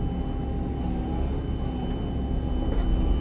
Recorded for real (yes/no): yes